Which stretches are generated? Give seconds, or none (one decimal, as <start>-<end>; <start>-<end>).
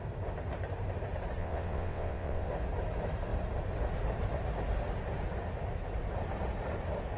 1.4-2.5